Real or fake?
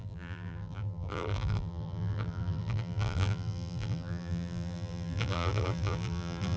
fake